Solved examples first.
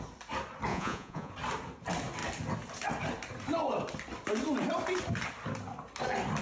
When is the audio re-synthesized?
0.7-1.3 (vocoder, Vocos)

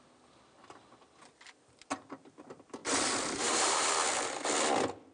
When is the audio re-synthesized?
2.8-3.9 (vocoder, BigVGAN v2)